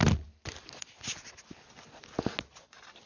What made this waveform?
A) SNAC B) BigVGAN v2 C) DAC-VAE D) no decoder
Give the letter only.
D